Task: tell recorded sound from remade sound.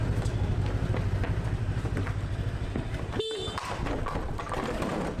recorded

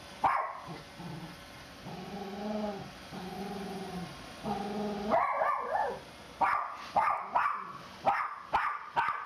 recorded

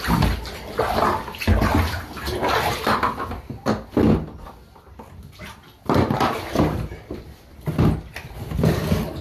recorded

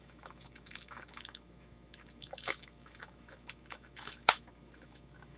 remade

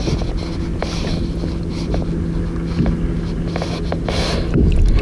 recorded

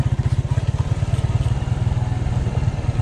recorded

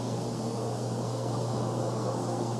remade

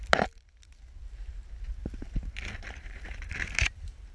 recorded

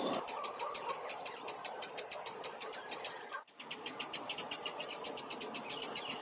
remade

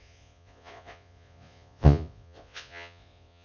remade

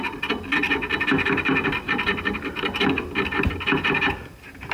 recorded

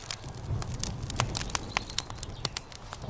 recorded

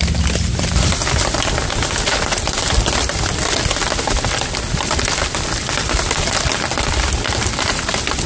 recorded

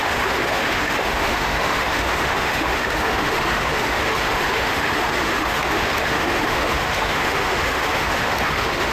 remade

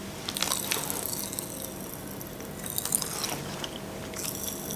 recorded